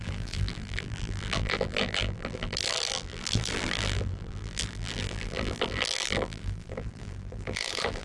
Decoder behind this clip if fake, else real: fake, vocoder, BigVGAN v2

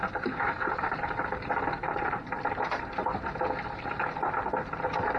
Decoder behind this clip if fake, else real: fake, vocoder, BigVGAN v2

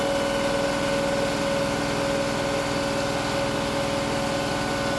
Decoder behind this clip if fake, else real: real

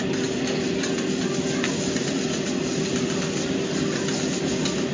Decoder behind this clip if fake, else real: real